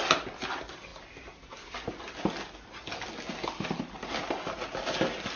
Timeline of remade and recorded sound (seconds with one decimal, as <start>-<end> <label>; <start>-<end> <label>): 0.0-5.4 recorded